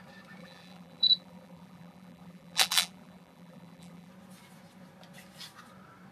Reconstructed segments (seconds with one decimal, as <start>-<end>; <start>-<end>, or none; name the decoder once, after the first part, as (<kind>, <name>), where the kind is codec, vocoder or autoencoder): 0.4-4.1 (vocoder, BigVGAN v2)